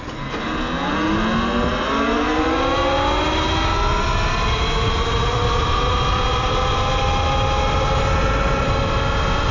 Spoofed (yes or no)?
no